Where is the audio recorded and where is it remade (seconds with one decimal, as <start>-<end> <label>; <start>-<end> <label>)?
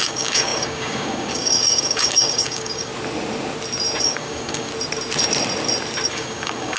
0.0-2.9 remade; 2.9-4.0 recorded; 4.0-4.7 remade; 4.7-6.1 recorded; 6.1-6.8 remade